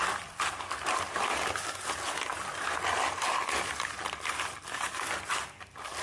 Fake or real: real